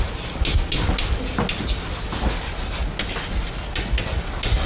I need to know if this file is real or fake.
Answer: real